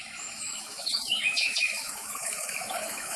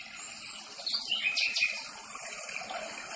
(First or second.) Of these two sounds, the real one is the second